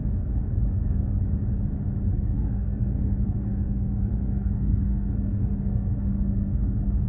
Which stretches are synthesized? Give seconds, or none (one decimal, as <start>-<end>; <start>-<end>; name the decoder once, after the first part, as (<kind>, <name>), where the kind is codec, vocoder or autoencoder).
0.7-1.2 (codec, SNAC); 2.1-7.1